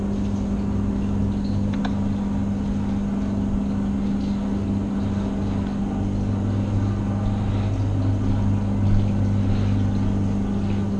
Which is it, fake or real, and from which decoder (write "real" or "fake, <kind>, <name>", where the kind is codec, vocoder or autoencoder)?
real